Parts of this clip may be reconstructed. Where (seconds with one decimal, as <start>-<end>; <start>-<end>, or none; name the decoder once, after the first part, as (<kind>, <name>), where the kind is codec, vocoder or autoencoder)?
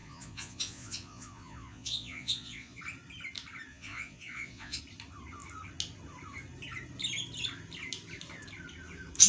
0.0-2.8 (vocoder, Vocos); 3.7-4.8